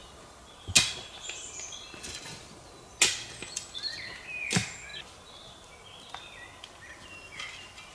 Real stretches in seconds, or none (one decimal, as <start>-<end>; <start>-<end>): 0.0-7.9